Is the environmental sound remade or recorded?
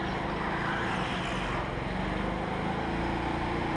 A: recorded